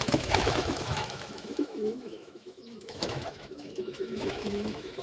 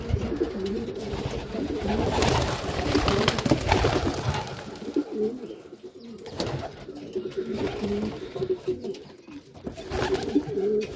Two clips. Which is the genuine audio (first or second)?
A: second